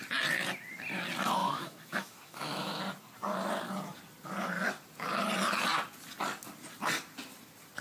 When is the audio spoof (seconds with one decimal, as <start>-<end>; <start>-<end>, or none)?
1.4-2.8